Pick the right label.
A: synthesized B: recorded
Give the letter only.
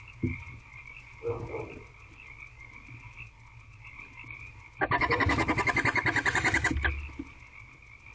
B